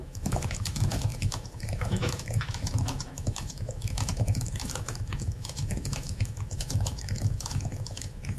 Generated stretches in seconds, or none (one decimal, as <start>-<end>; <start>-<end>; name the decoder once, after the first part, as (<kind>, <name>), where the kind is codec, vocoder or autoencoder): 0.0-8.4 (autoencoder, DAC-VAE)